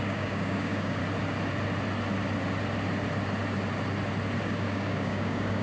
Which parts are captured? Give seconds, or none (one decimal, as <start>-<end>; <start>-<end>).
1.0-4.4